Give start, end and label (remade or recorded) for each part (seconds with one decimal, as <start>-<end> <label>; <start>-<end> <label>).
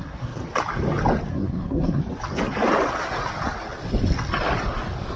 0.0-0.4 remade; 0.4-1.3 recorded; 1.3-2.0 remade; 2.0-5.2 recorded